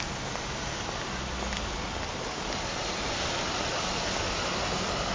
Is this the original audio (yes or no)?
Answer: yes